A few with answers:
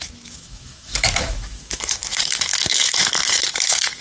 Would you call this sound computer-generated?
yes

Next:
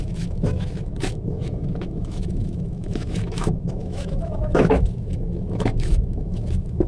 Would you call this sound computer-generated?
yes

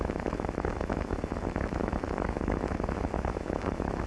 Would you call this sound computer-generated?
yes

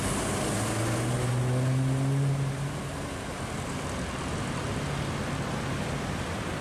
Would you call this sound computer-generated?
no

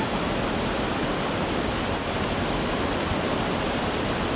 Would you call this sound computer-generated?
no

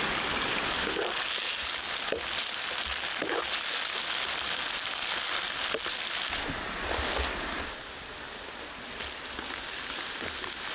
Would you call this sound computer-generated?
no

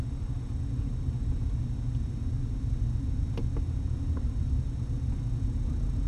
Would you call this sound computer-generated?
no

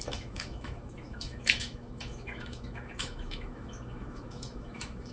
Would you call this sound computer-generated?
yes